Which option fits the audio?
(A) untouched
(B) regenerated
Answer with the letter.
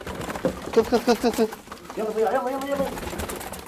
B